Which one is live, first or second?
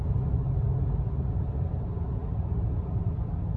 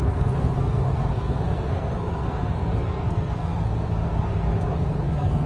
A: first